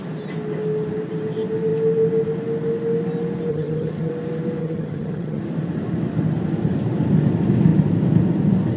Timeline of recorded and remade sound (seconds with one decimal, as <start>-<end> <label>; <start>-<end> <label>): 0.0-3.5 recorded; 3.5-4.1 remade; 4.1-4.6 recorded; 4.6-5.4 remade; 5.4-8.8 recorded